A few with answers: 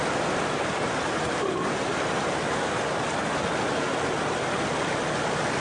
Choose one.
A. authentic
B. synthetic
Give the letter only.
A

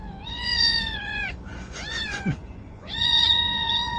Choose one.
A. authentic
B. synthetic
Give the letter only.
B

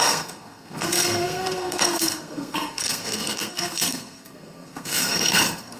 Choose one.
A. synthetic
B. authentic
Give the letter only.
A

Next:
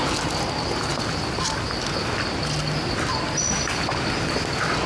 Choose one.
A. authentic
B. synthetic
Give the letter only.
A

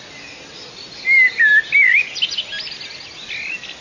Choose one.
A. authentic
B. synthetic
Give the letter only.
A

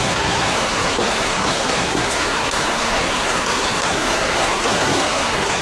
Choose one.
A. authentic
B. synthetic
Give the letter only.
B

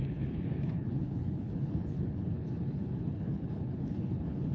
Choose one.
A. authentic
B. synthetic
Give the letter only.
B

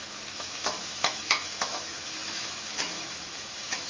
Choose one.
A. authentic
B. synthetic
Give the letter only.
B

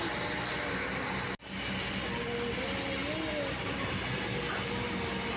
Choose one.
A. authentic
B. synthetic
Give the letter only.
A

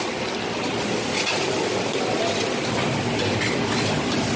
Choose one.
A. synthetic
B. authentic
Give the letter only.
B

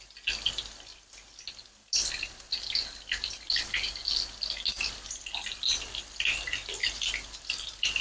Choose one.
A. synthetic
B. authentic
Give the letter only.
B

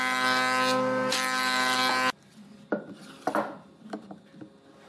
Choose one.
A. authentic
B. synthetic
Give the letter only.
A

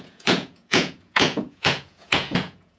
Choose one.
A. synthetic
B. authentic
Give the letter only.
A